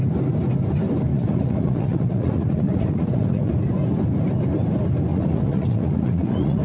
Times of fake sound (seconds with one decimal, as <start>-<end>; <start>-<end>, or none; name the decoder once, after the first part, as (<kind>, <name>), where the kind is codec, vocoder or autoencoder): 1.1-3.5 (vocoder, Vocos); 5.1-6.6